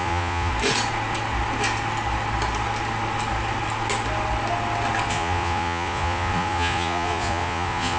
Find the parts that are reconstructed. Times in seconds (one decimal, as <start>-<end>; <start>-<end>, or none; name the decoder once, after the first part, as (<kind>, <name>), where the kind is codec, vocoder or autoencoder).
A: 0.0-0.5 (vocoder, Vocos); 5.1-8.0